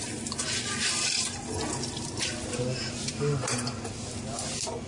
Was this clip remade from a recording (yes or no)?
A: no